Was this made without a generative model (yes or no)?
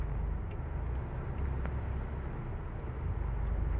yes